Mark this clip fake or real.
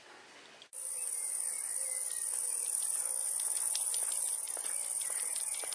real